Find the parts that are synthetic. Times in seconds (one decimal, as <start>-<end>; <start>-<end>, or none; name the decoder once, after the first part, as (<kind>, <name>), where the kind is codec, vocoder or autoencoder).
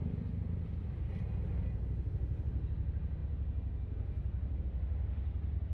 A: none